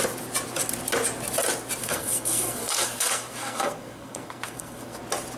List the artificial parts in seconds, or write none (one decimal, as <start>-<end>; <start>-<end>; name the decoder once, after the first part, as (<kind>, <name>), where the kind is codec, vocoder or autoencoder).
1.8-5.0 (codec, SNAC)